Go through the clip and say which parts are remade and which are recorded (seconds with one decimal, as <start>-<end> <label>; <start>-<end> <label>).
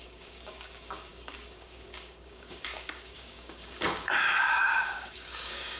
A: 0.0-5.8 remade